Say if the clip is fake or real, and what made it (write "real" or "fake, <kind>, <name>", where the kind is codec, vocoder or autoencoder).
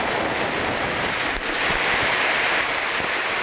real